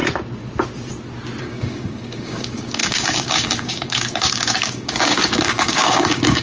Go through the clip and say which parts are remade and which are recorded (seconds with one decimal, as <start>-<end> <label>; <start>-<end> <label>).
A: 0.0-1.4 recorded; 1.4-6.4 remade